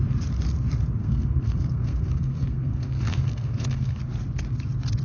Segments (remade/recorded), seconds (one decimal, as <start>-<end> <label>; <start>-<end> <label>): 0.0-1.0 recorded; 1.0-4.0 remade; 4.0-5.0 recorded